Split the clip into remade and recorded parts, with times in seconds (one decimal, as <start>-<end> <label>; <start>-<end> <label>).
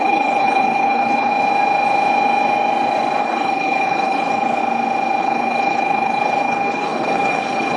0.0-1.3 remade; 1.3-3.2 recorded; 3.2-4.6 remade; 4.6-5.2 recorded; 5.2-7.8 remade